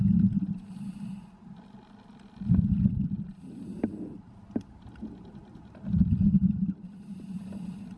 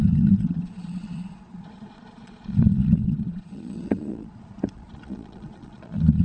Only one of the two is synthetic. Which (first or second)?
second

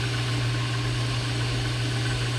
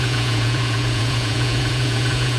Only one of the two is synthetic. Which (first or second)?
second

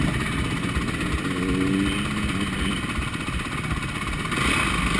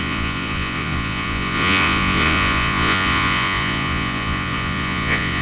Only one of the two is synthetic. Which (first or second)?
second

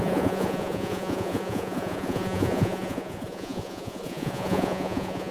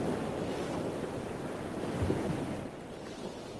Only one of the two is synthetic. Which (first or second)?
first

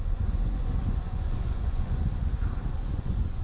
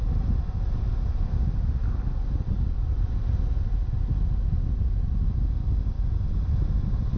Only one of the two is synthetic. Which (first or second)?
first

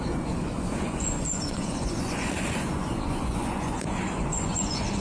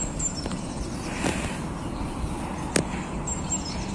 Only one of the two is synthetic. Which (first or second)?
first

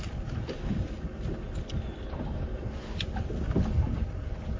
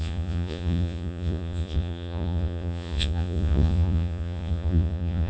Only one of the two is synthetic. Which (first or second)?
second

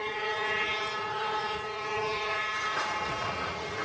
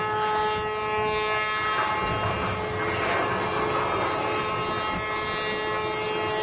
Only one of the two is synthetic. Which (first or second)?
first